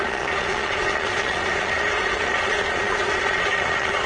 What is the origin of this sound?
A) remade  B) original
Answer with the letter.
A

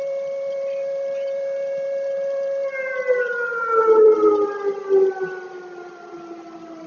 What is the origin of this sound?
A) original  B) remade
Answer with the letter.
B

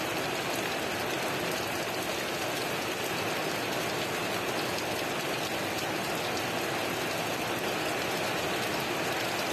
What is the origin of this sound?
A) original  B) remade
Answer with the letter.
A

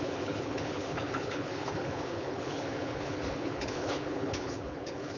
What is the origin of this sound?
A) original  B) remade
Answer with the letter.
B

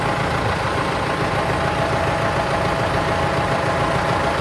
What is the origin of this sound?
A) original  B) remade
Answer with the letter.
A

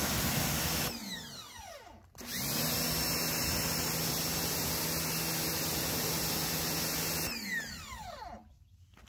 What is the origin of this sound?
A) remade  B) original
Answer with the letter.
B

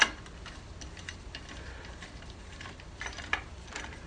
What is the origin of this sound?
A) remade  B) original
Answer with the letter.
B